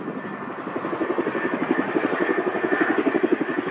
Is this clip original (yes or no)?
yes